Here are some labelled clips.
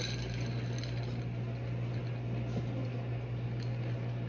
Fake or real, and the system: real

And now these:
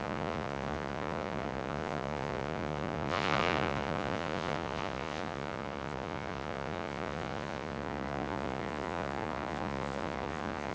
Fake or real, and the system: fake, vocoder, Vocos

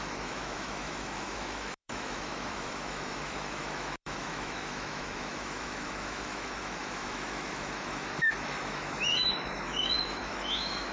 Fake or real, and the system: fake, autoencoder, DAC-VAE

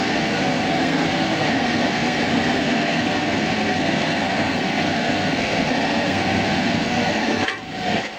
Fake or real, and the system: fake, codec, SNAC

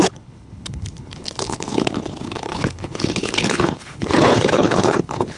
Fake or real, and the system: fake, codec, HILCodec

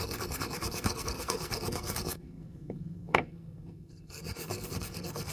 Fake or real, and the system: fake, codec, SNAC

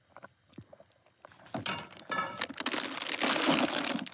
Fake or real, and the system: real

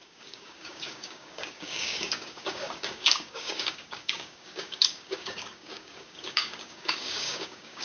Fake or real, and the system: fake, codec, DAC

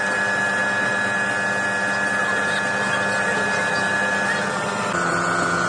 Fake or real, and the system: real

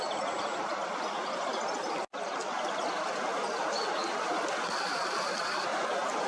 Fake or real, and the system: fake, vocoder, BigVGAN v2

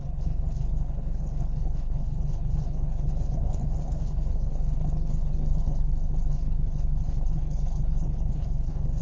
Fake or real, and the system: fake, codec, HILCodec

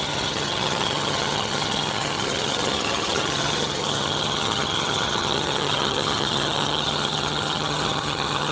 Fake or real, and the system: fake, vocoder, HiFi-GAN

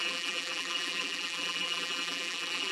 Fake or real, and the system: fake, vocoder, BigVGAN v2